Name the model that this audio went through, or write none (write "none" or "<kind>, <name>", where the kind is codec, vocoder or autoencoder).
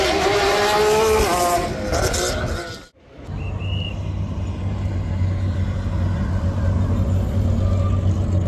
none